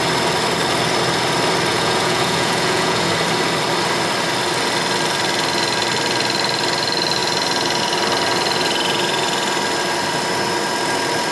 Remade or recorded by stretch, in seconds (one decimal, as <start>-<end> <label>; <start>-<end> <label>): 0.0-1.7 recorded; 1.7-3.1 remade; 3.1-11.3 recorded

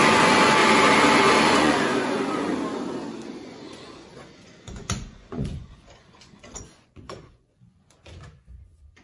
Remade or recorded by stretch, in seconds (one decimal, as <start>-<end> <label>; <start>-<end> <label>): 0.0-0.6 remade; 0.6-1.4 recorded; 1.4-2.5 remade; 2.5-3.3 recorded; 3.3-9.0 remade

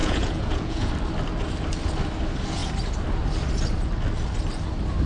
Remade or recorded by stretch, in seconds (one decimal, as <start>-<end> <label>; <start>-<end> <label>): 0.0-0.9 remade; 0.9-5.1 recorded

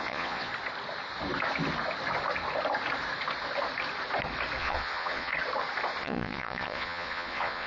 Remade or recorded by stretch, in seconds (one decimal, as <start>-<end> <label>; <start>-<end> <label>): 0.0-0.5 remade; 0.5-4.6 recorded; 4.6-5.3 remade; 5.3-6.0 recorded; 6.0-7.7 remade

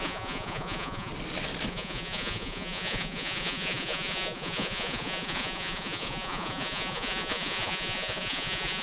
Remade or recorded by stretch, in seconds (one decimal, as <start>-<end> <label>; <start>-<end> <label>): 0.0-1.1 remade; 1.1-1.7 recorded; 1.7-8.8 remade

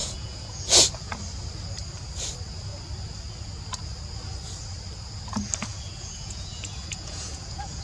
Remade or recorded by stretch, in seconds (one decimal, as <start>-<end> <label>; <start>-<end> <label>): 0.0-1.1 remade; 1.1-5.7 recorded; 5.7-7.8 remade

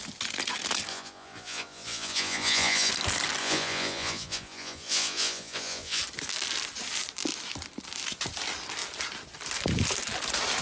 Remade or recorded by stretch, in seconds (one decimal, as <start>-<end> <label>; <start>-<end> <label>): 0.0-0.9 recorded; 0.9-2.9 remade; 2.9-3.4 recorded; 3.4-6.0 remade; 6.0-10.6 recorded

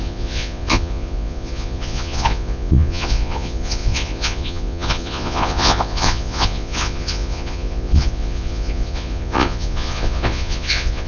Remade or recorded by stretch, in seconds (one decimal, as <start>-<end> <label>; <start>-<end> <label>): 0.0-11.1 remade